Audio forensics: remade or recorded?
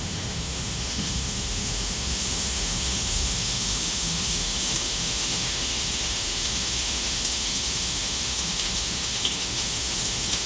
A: remade